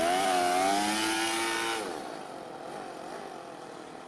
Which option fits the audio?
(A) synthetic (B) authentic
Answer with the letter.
B